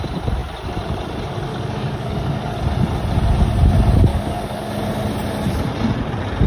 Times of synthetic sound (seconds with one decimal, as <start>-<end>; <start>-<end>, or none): 1.5-2.6; 4.1-4.7